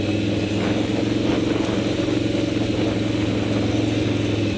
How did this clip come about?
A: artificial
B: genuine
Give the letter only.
B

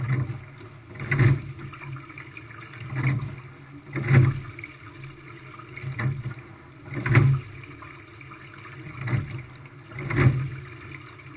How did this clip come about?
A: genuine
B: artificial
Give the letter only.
A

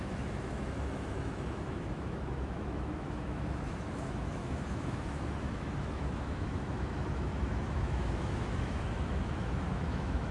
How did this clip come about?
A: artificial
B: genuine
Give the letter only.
A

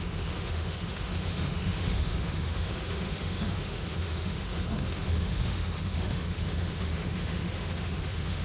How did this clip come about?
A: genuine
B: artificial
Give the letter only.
B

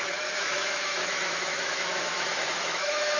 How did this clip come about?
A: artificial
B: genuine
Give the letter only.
A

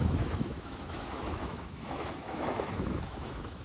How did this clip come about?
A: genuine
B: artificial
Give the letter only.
B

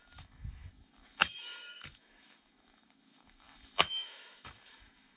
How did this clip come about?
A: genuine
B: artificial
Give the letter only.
B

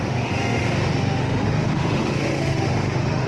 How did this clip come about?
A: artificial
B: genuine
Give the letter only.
A